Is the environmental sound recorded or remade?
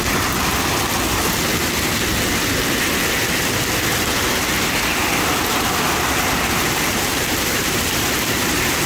recorded